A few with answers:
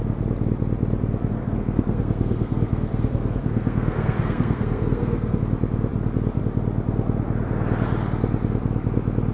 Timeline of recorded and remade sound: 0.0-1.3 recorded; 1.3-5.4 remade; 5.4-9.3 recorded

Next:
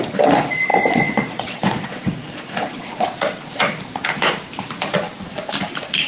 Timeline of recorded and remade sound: 0.0-0.7 recorded; 0.7-3.4 remade; 3.4-6.1 recorded